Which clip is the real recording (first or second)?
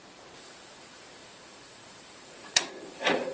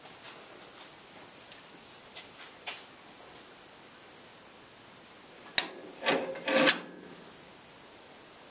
second